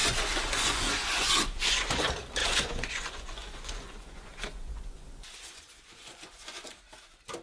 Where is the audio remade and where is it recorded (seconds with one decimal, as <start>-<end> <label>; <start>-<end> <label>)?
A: 0.0-2.0 remade; 2.0-2.4 recorded; 2.4-6.8 remade; 6.8-7.4 recorded